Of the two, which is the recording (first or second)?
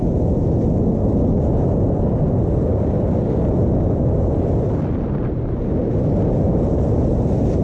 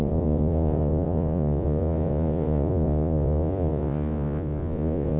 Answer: first